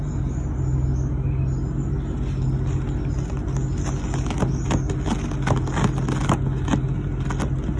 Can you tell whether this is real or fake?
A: real